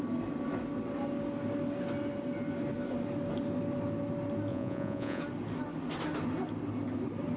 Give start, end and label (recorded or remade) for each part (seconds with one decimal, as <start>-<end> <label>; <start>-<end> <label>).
0.0-4.5 recorded; 4.5-5.2 remade; 5.2-7.4 recorded